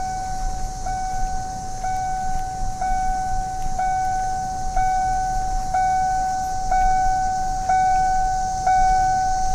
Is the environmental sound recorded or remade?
recorded